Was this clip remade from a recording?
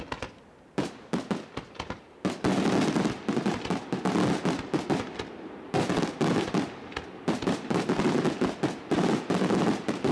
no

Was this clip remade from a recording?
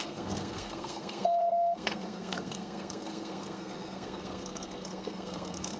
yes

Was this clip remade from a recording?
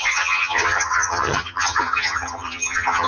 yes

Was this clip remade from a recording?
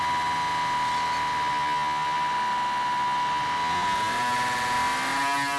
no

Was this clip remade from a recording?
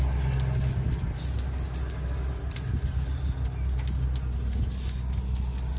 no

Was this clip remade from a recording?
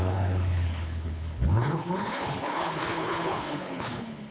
yes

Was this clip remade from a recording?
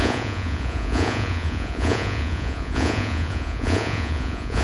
yes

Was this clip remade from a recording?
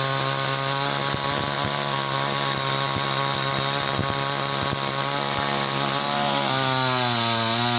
no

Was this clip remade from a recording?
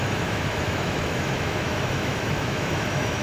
yes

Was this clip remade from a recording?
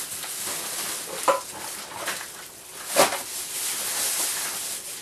no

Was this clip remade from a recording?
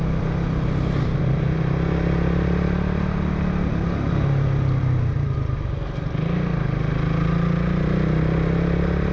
no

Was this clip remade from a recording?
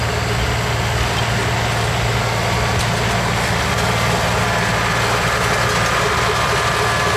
no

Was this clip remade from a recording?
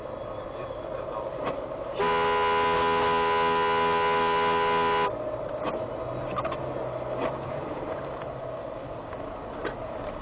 no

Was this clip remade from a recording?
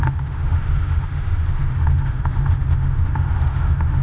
yes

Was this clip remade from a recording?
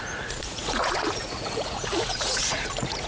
yes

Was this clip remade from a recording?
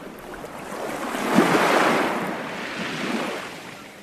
no